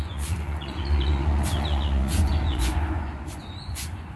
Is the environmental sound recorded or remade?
remade